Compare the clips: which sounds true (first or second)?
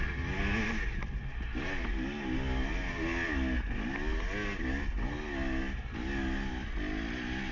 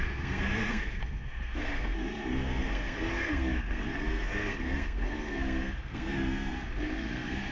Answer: first